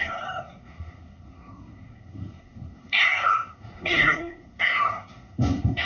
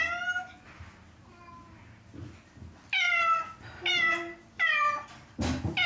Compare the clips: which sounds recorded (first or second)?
second